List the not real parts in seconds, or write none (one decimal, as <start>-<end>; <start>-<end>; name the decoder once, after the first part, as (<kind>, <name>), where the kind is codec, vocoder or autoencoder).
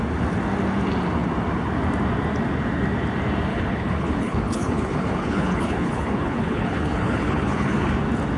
3.5-7.9 (codec, HILCodec)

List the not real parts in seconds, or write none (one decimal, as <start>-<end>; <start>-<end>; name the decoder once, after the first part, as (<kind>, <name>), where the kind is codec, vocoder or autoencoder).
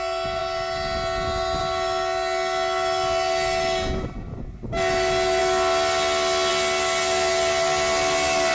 none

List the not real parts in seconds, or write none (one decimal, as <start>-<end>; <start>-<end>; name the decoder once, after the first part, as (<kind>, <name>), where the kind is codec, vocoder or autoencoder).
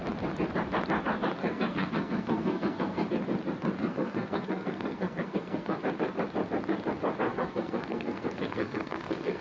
1.4-3.1 (codec, SNAC); 3.8-5.8; 7.3-9.4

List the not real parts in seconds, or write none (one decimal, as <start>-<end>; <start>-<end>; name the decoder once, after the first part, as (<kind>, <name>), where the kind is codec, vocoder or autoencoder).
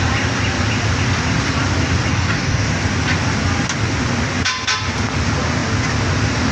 2.1-2.7 (codec, DAC)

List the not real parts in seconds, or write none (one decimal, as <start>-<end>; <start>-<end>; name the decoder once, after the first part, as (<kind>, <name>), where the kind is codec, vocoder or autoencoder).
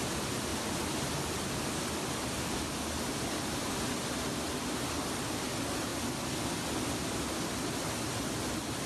none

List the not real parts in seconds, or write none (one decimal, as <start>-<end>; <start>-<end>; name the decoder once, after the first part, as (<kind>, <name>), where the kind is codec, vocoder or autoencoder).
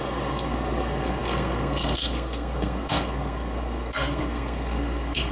0.0-5.3 (codec, SNAC)